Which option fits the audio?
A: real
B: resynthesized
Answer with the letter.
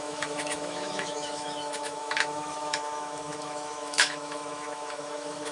B